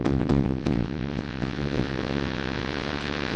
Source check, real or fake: fake